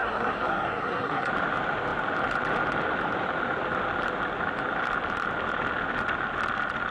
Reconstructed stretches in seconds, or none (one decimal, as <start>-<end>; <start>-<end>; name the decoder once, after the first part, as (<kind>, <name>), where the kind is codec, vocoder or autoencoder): 0.0-1.3 (codec, SNAC)